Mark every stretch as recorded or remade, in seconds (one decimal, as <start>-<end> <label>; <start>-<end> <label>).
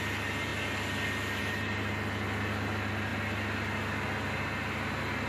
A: 0.0-5.3 recorded